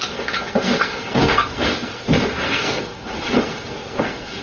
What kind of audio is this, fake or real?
fake